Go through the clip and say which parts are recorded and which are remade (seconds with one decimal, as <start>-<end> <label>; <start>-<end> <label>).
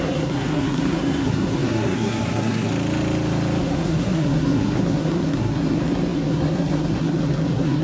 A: 0.0-2.7 remade; 2.7-3.6 recorded; 3.6-7.8 remade